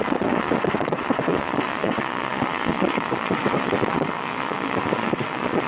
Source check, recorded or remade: remade